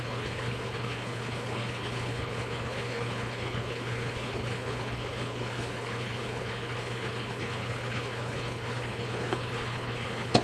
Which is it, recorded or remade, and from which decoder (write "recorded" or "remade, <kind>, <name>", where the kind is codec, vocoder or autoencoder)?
remade, codec, HILCodec